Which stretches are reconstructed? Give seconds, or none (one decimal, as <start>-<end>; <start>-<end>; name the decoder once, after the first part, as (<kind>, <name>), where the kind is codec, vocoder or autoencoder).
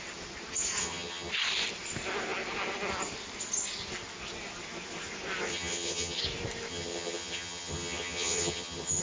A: 0.8-1.3 (vocoder, HiFi-GAN); 5.5-6.2; 6.7-9.0